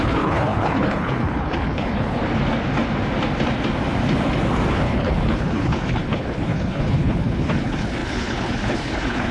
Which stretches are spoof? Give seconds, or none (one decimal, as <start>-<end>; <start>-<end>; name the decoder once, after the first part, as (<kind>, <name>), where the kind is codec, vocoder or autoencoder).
0.0-2.2 (codec, HILCodec); 4.7-9.3